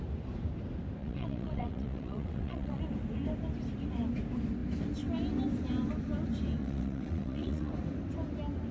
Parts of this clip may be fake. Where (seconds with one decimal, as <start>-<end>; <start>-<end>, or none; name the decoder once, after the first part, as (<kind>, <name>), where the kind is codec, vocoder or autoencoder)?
1.0-2.8 (vocoder, WaveNeXt); 6.6-7.7